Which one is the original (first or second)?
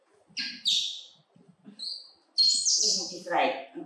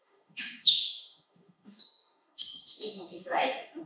first